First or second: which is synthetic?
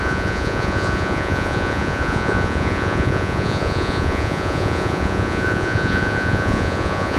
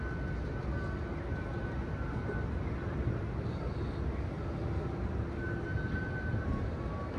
first